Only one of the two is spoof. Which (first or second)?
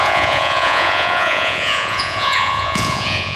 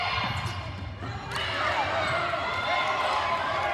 first